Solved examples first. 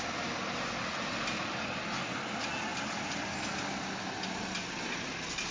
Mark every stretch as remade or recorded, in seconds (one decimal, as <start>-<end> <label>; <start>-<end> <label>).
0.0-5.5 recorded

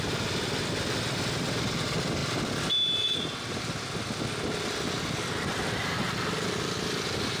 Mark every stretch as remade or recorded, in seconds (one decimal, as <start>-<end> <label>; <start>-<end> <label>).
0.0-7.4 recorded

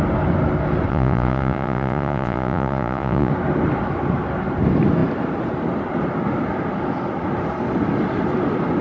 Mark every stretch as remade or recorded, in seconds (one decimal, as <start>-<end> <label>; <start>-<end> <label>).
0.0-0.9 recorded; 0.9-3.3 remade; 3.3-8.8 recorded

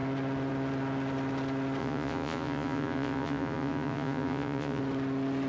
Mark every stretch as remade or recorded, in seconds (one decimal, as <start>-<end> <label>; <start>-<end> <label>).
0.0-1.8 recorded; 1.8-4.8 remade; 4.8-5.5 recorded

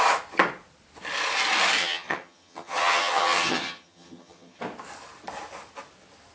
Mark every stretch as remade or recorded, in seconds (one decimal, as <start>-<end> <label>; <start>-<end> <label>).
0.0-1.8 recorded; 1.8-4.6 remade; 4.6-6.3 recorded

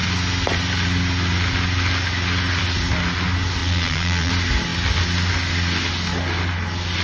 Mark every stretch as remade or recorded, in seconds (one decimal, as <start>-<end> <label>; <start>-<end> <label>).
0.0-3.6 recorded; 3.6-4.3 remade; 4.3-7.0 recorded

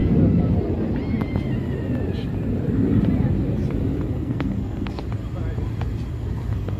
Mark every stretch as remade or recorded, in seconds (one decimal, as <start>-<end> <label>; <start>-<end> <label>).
0.0-4.1 recorded; 4.1-5.0 remade; 5.0-6.1 recorded; 6.1-6.8 remade